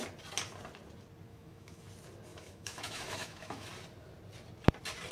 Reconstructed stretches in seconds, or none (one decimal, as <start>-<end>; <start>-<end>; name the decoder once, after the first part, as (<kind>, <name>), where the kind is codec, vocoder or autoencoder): 1.3-1.8 (autoencoder, DAC-VAE); 2.3-3.7